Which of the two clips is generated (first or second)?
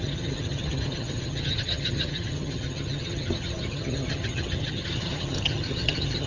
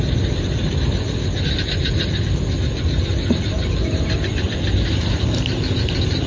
first